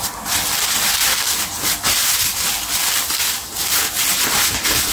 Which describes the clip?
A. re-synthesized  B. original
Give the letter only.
B